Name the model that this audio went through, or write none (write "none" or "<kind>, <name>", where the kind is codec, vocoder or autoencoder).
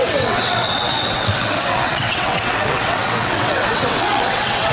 vocoder, WaveNeXt